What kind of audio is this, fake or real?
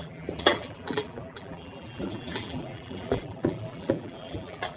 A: fake